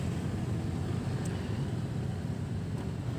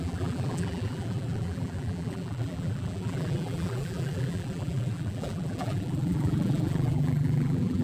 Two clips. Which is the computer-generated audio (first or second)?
second